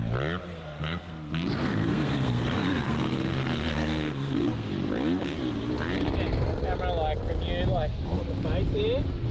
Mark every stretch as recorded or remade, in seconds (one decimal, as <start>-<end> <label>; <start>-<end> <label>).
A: 0.0-0.4 recorded; 0.4-4.7 remade; 4.7-9.3 recorded